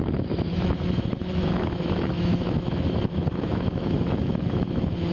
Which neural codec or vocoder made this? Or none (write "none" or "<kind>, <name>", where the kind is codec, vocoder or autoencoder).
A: autoencoder, DAC-VAE